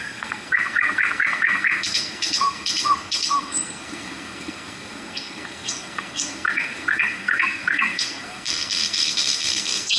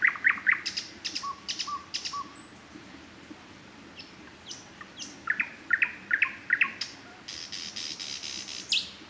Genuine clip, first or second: second